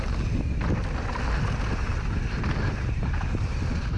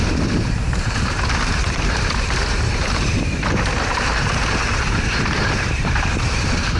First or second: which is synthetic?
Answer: second